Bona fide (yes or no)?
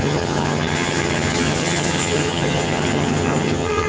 no